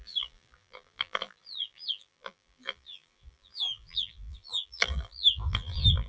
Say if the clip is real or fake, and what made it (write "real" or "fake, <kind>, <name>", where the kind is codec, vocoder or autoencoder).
fake, vocoder, BigVGAN v2